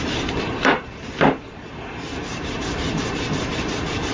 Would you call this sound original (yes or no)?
no